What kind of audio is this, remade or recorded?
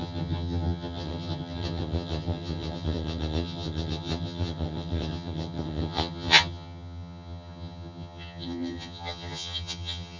remade